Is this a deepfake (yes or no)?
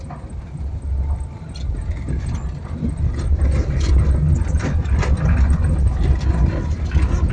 no